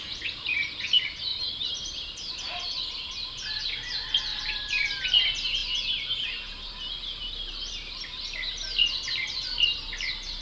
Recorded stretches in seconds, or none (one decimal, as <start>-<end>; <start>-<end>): 0.0-4.3; 5.0-10.4